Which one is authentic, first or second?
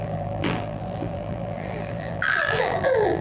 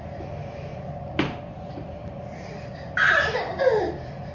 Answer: second